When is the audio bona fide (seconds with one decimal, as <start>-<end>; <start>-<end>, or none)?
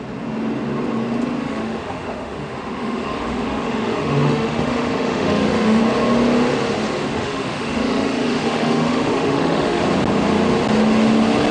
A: 0.0-1.4; 5.8-7.1; 9.8-11.5